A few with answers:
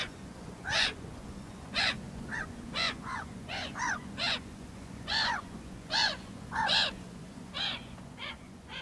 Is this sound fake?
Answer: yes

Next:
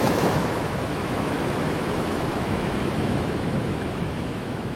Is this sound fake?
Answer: yes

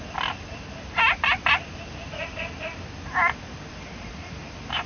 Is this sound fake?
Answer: no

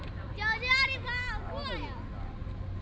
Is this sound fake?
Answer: no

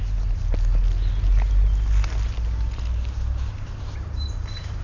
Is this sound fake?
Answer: no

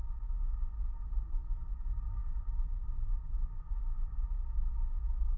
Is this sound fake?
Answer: no